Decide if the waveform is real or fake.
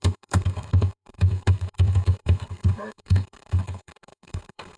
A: fake